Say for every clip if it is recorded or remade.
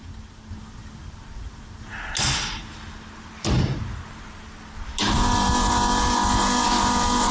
recorded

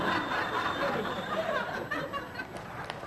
recorded